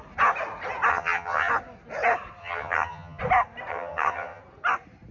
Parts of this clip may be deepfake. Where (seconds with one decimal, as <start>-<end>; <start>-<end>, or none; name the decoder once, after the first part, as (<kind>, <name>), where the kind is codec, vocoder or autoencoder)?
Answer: 0.9-1.5 (vocoder, HiFi-GAN); 2.4-3.2; 3.7-4.4